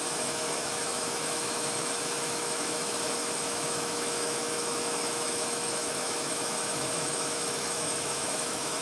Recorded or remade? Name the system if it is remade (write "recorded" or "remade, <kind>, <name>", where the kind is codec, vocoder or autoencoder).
remade, autoencoder, DAC-VAE